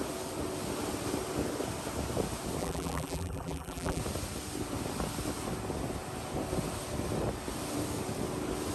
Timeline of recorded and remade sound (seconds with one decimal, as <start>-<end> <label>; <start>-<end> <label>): 0.0-2.6 recorded; 2.6-4.0 remade; 4.0-8.7 recorded